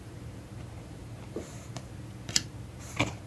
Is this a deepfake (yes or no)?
yes